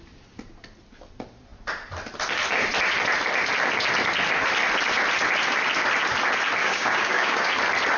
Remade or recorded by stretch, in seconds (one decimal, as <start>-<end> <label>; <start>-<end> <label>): 0.0-6.6 recorded; 6.6-7.5 remade; 7.5-8.0 recorded